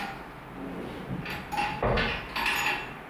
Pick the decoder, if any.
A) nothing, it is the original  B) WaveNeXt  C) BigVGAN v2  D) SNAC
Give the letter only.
A